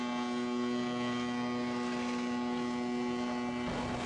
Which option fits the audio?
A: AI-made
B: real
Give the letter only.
B